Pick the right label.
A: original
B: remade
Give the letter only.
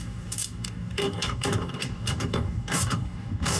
B